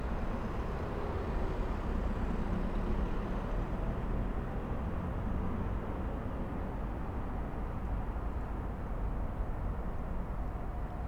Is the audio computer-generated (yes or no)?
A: no